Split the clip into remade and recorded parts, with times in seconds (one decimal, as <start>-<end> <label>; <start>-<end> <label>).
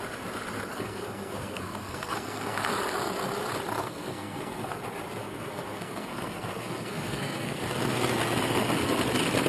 0.0-0.7 recorded; 0.7-2.7 remade; 2.7-3.8 recorded; 3.8-4.8 remade; 4.8-5.2 recorded; 5.2-7.6 remade; 7.6-9.5 recorded